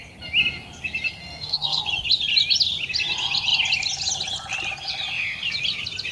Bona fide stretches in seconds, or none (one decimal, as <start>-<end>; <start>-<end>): 0.0-1.2; 1.8-6.1